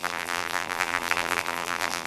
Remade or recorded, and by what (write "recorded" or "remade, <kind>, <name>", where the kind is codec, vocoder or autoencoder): remade, vocoder, BigVGAN v2